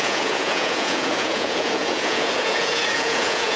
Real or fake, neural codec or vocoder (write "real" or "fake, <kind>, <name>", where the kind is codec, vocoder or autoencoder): fake, vocoder, Vocos